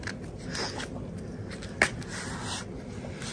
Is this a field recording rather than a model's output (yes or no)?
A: yes